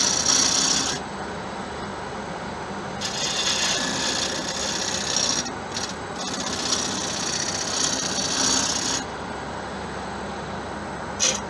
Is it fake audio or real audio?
real